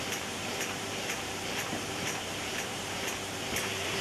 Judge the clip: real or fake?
fake